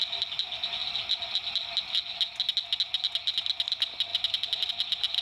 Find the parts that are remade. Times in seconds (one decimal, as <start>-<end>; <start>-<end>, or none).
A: none

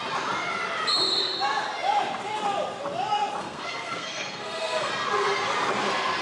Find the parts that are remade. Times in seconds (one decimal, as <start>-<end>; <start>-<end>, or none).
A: 3.4-4.9